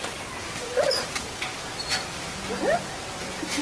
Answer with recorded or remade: recorded